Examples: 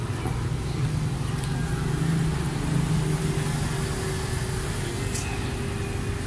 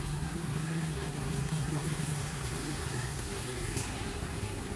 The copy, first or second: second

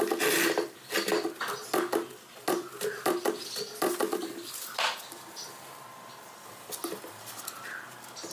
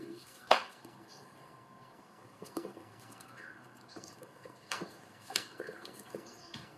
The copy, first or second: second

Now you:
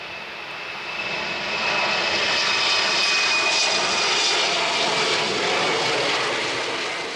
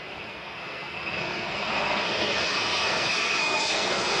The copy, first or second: second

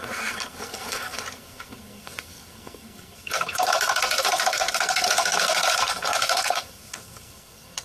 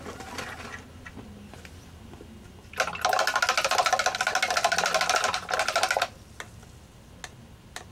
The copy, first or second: first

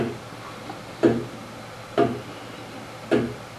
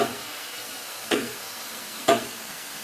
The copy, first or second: second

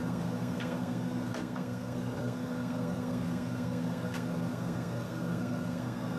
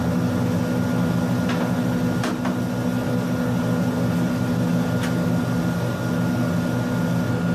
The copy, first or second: first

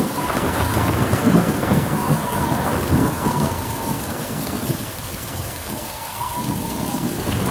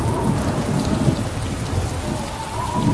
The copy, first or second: first